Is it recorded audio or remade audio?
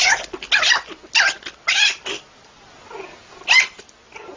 recorded